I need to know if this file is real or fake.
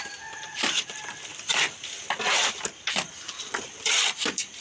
fake